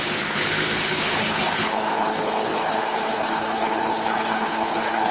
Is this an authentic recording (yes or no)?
no